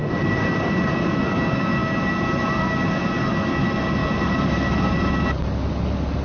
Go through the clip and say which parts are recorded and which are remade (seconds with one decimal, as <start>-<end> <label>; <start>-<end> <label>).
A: 0.0-0.9 remade; 0.9-4.0 recorded; 4.0-5.4 remade; 5.4-6.2 recorded